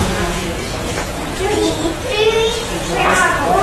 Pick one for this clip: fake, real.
fake